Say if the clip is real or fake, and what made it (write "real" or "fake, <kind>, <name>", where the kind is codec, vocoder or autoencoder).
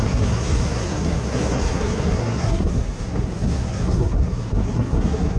fake, codec, SNAC